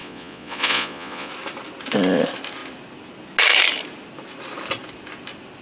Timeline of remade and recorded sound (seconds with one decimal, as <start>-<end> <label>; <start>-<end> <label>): 0.0-1.3 remade; 1.3-5.6 recorded